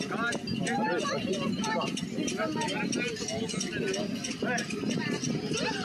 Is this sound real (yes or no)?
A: yes